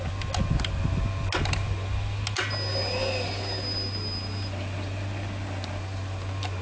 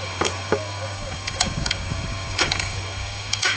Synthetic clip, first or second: second